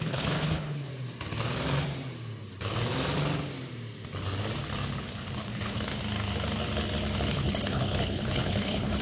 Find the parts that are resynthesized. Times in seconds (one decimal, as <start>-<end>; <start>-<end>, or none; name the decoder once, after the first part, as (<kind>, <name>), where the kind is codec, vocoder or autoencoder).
0.0-0.9 (codec, HILCodec); 5.0-6.0; 7.3-9.0